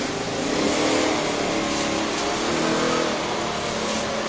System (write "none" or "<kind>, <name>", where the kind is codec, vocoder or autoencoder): none